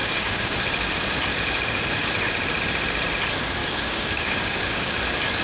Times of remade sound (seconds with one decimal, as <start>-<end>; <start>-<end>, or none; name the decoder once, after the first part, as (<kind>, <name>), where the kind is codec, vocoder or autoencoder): 0.0-0.6 (codec, DAC); 3.6-5.0